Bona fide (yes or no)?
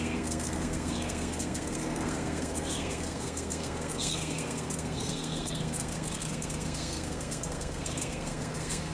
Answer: no